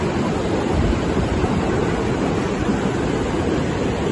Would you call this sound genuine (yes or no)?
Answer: yes